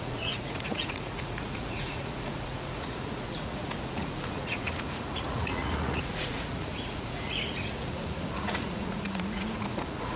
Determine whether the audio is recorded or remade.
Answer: remade